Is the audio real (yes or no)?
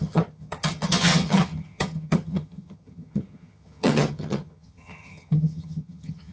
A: no